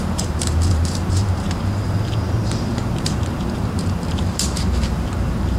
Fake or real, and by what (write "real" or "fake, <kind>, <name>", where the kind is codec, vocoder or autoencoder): fake, vocoder, BigVGAN v2